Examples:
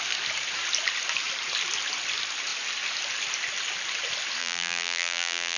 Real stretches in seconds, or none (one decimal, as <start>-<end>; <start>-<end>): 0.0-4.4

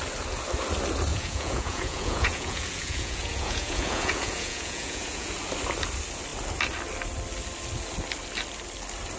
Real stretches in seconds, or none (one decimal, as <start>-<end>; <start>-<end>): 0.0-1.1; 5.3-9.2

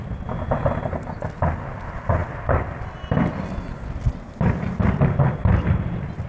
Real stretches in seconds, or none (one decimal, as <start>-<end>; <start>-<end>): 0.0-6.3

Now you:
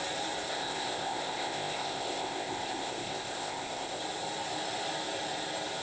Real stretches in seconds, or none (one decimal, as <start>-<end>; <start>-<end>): 0.0-0.5; 4.0-5.8

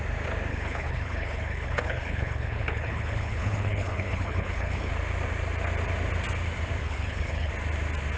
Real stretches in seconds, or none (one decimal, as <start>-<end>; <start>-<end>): 0.0-0.5; 4.9-6.8; 7.5-8.2